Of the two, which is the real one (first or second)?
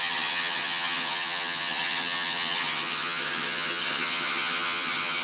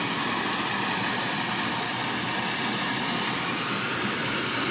second